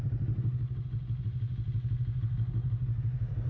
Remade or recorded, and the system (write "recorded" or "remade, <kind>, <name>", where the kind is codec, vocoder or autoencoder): recorded